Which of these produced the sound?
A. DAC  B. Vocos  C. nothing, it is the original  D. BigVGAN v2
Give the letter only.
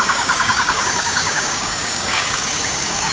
A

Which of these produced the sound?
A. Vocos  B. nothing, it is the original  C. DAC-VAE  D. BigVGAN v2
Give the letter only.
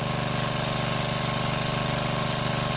B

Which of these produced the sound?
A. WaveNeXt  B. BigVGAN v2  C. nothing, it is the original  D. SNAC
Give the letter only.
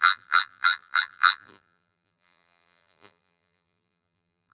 B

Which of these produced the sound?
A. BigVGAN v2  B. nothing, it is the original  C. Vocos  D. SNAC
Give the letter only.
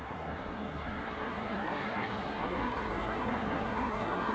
D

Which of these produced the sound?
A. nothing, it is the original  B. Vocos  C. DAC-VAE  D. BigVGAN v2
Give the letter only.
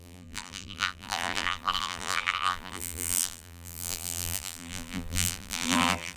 D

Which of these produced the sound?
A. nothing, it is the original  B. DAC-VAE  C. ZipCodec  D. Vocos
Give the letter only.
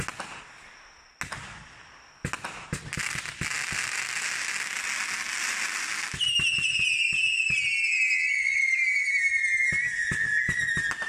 A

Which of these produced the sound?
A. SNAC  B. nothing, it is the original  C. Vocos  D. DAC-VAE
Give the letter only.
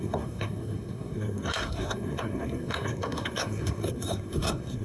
A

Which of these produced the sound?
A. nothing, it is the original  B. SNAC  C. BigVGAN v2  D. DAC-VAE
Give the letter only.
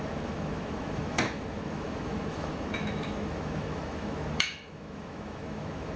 D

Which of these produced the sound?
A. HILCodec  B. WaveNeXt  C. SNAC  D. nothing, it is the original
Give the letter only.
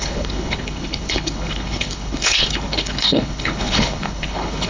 A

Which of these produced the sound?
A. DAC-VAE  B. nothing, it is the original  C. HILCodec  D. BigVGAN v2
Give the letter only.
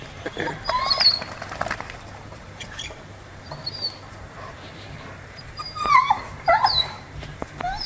D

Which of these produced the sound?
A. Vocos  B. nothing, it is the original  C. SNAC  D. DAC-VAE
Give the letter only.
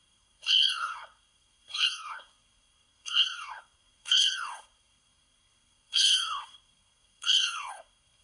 C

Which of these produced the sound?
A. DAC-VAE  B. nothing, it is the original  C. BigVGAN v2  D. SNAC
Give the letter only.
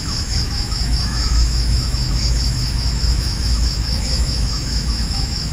A